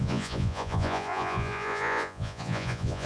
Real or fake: fake